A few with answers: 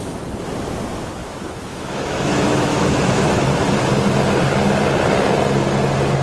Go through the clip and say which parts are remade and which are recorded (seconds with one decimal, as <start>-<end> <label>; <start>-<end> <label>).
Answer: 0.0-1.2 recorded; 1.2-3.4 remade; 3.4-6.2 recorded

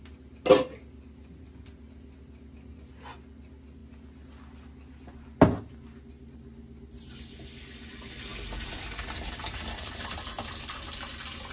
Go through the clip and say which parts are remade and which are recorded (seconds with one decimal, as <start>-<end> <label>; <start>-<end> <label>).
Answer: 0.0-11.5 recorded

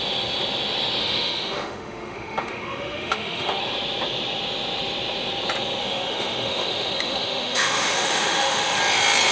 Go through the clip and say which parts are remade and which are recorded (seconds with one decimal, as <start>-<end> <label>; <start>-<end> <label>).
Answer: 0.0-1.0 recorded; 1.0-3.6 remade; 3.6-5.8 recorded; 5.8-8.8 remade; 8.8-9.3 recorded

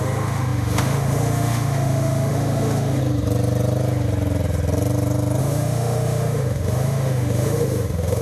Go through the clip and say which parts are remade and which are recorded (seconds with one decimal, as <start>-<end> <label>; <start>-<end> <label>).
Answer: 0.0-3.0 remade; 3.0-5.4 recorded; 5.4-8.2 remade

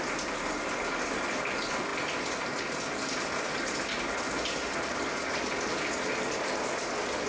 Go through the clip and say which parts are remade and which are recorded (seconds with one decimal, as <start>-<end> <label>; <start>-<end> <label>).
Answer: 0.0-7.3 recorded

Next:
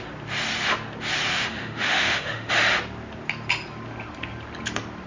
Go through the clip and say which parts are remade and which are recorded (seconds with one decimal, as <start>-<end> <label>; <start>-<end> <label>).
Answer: 0.0-1.3 recorded; 1.3-2.5 remade; 2.5-5.1 recorded

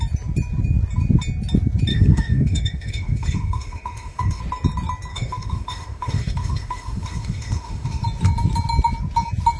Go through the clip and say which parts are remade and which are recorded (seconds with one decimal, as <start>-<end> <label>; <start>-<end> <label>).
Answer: 0.0-1.9 recorded; 1.9-4.4 remade; 4.4-5.1 recorded; 5.1-8.0 remade; 8.0-9.6 recorded

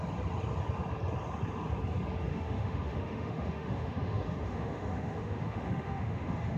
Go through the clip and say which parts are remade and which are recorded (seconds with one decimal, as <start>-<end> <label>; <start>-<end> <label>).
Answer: 0.0-2.3 recorded; 2.3-6.6 remade